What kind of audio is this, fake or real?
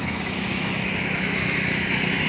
fake